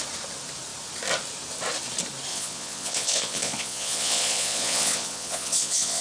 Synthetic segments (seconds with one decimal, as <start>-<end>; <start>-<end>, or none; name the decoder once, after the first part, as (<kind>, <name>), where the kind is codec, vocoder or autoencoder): 2.3-6.0 (vocoder, Vocos)